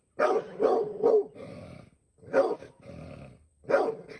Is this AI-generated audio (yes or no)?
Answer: no